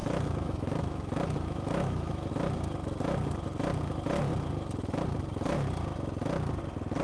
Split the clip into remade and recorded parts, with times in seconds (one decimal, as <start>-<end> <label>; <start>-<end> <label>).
0.0-2.3 remade; 2.3-7.0 recorded